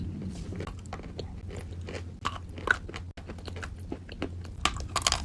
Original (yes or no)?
yes